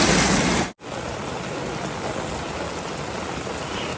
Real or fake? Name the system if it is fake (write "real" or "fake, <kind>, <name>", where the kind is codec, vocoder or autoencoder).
real